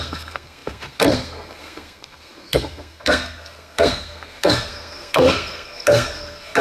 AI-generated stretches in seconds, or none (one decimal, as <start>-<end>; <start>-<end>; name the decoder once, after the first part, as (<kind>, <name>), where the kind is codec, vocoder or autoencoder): 0.0-6.6 (codec, SNAC)